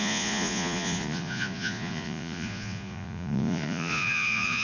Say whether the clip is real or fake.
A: fake